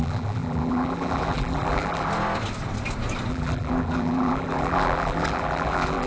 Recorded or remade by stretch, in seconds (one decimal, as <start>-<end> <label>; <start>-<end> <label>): 0.0-2.1 remade; 2.1-3.3 recorded; 3.3-6.1 remade